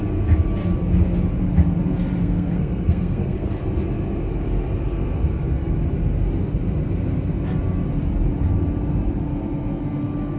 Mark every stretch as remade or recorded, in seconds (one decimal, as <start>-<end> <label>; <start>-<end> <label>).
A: 0.0-2.2 recorded; 2.2-3.5 remade; 3.5-10.4 recorded

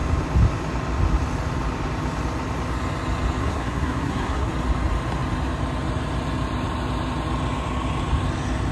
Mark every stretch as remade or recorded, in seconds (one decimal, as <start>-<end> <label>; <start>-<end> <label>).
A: 0.0-3.4 recorded; 3.4-4.5 remade; 4.5-8.7 recorded

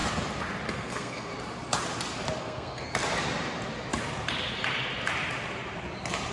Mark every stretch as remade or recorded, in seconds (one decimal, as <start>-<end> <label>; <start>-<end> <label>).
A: 0.0-0.7 recorded; 0.7-1.3 remade; 1.3-2.4 recorded; 2.4-2.9 remade; 2.9-6.3 recorded

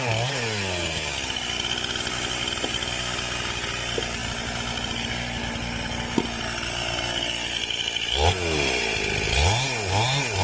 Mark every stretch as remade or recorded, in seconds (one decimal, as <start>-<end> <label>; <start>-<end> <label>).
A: 0.0-10.4 recorded

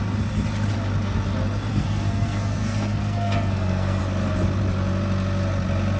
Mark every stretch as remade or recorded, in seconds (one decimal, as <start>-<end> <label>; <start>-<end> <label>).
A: 0.0-1.7 recorded; 1.7-4.0 remade; 4.0-6.0 recorded

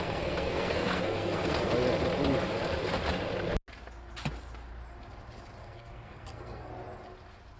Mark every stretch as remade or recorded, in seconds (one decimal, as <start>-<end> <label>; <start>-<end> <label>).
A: 0.0-1.7 remade; 1.7-5.6 recorded; 5.6-6.7 remade; 6.7-7.6 recorded

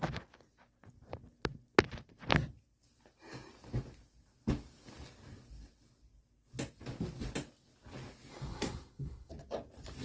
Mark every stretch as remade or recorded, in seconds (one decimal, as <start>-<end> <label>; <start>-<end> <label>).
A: 0.0-8.3 recorded; 8.3-9.3 remade; 9.3-10.0 recorded

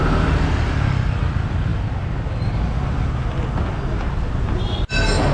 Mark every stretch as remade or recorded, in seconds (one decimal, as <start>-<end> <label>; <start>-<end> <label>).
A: 0.0-5.3 recorded